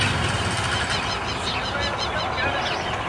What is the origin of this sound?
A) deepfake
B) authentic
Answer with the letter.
B